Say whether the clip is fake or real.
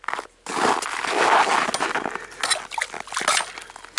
real